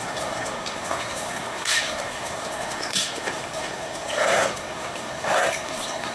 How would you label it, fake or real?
fake